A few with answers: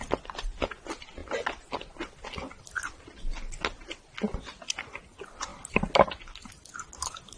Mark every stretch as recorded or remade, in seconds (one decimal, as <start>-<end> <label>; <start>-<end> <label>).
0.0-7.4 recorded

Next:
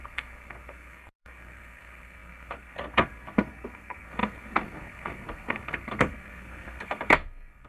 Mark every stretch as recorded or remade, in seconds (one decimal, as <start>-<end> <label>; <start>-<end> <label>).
0.0-7.7 remade

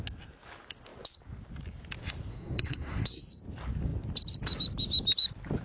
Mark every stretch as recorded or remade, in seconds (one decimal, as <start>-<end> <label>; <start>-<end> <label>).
0.0-2.3 recorded; 2.3-3.2 remade; 3.2-5.6 recorded